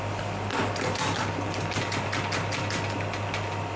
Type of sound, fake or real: real